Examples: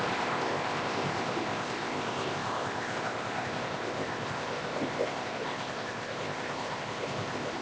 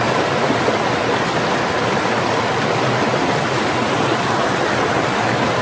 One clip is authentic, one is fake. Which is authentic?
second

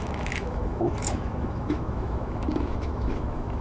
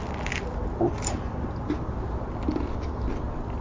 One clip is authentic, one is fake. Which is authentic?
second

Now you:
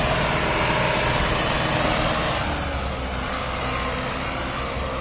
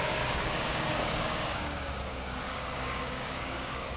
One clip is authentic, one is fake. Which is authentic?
first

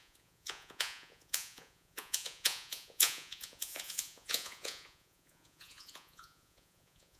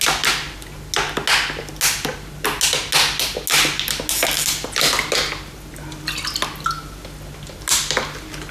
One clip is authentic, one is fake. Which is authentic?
second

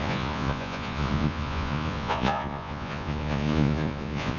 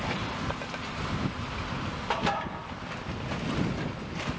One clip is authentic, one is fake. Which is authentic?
second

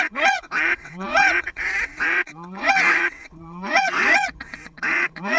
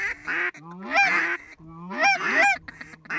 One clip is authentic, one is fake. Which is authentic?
second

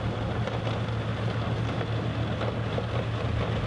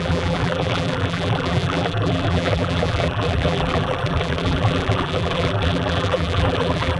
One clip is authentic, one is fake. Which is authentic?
first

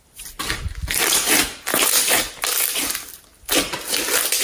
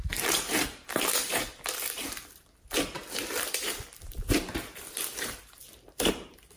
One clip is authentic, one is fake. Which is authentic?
first